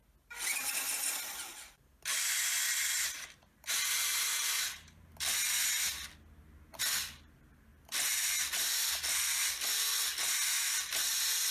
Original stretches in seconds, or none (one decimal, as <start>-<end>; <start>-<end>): 0.0-2.7; 5.1-11.5